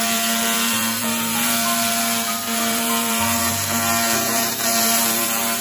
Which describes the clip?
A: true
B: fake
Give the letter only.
B